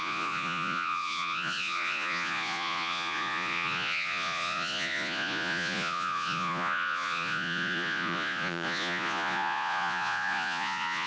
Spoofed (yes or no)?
yes